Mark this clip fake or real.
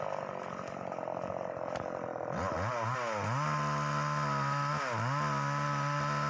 real